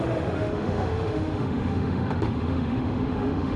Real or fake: fake